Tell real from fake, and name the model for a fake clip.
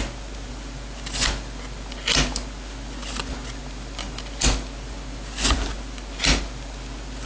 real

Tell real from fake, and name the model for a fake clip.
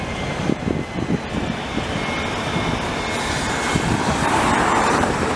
real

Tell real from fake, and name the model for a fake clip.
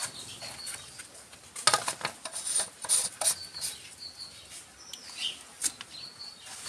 real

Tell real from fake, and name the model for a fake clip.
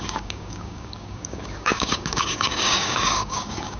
fake, codec, DAC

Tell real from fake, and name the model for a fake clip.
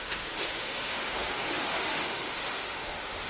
fake, autoencoder, DAC-VAE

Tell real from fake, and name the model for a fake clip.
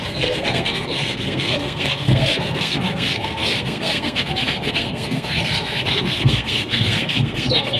fake, codec, SNAC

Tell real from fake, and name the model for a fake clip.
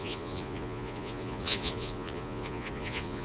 fake, vocoder, Vocos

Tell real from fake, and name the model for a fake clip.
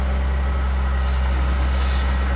real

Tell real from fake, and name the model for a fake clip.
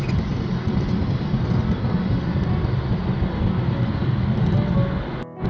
real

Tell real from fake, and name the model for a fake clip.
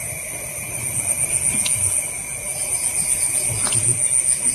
real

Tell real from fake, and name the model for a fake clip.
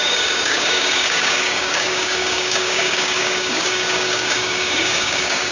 fake, codec, DAC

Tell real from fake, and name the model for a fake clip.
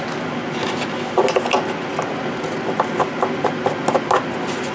real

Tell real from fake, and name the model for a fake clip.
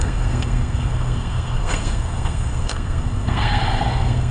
fake, codec, SNAC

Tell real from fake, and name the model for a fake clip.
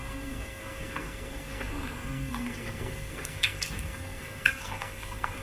fake, codec, SNAC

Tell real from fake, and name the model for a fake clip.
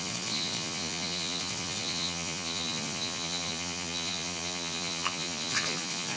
fake, vocoder, Vocos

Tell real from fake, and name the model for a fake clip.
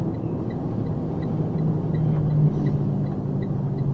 real